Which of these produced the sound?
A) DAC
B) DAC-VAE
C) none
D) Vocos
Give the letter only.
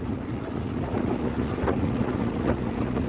D